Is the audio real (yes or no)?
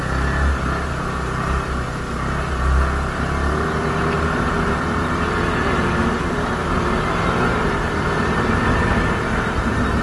yes